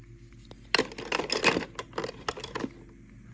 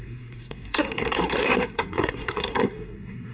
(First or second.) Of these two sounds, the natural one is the first